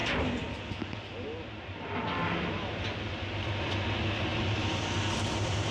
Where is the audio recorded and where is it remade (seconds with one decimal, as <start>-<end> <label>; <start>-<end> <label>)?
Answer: 0.0-4.3 recorded; 4.3-5.1 remade; 5.1-5.7 recorded